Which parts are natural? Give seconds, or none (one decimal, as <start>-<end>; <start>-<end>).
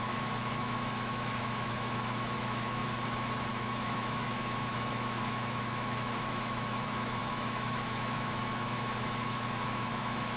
2.8-3.5